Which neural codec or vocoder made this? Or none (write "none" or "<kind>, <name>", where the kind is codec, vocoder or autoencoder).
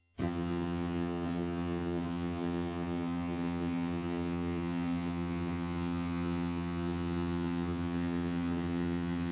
vocoder, HiFi-GAN